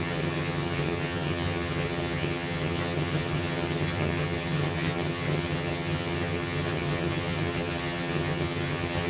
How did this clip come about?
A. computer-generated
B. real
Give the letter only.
A